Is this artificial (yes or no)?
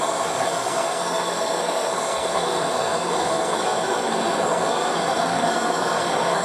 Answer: yes